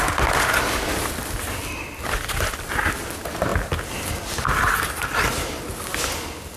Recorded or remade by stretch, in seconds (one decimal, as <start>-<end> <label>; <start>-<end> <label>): 0.0-6.6 recorded